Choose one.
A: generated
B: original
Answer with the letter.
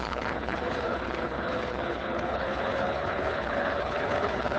A